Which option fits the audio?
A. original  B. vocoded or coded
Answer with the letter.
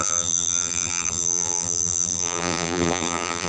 B